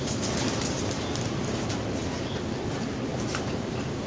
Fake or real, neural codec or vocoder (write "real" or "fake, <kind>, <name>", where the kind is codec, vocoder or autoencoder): fake, vocoder, BigVGAN v2